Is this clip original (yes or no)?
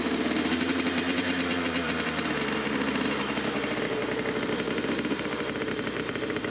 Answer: no